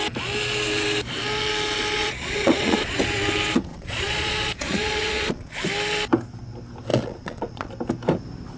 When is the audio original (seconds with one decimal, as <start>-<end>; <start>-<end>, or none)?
0.0-2.0; 3.0-3.7; 5.5-6.9; 7.7-8.6